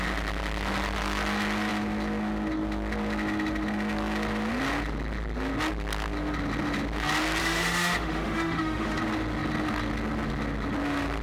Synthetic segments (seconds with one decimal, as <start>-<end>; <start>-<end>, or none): 7.4-9.0